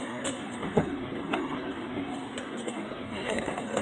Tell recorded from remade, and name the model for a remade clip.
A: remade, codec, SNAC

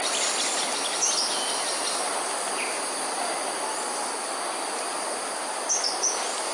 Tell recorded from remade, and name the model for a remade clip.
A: recorded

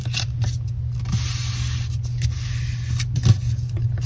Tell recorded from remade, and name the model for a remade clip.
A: recorded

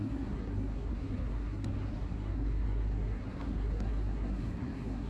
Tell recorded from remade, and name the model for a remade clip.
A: remade, codec, SNAC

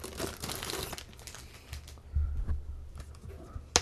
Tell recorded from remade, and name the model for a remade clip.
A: recorded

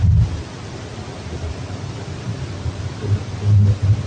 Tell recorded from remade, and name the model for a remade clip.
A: recorded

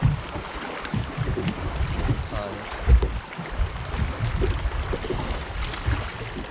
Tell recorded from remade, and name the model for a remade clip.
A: recorded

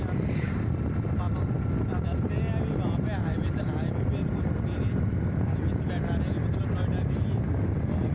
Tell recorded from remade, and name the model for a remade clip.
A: recorded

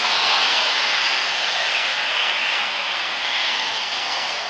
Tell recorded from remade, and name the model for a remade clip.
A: remade, codec, SNAC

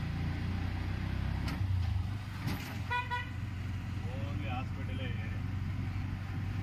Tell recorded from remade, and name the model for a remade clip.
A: recorded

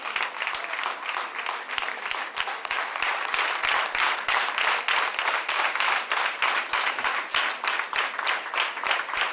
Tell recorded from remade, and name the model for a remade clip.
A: recorded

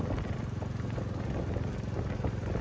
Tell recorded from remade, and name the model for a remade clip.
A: recorded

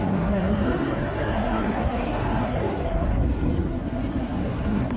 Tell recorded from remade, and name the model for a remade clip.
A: remade, codec, SNAC